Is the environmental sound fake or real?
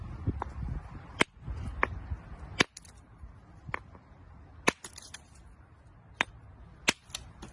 real